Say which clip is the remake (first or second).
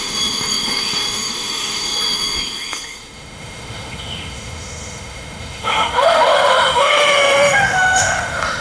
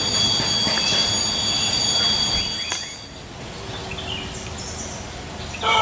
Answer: first